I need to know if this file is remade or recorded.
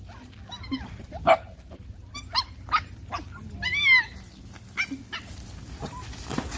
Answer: recorded